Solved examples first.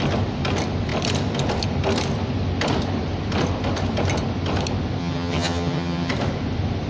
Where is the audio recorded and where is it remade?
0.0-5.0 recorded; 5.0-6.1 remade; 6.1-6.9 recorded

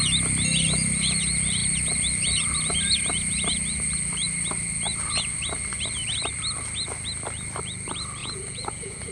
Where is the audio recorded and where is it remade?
0.0-8.2 recorded; 8.2-9.1 remade

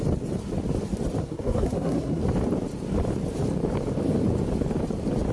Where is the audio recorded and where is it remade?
0.0-1.2 recorded; 1.2-2.2 remade; 2.2-5.3 recorded